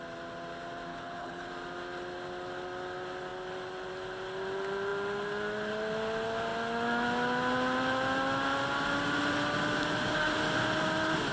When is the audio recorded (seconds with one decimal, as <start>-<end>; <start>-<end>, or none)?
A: 0.0-0.9; 1.5-11.3